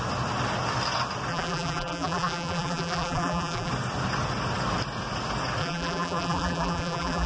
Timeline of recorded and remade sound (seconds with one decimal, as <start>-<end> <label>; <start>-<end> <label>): 0.0-1.3 recorded; 1.3-3.7 remade; 3.7-5.6 recorded; 5.6-7.3 remade